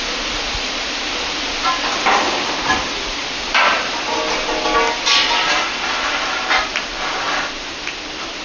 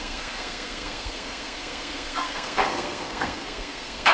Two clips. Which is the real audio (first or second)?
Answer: first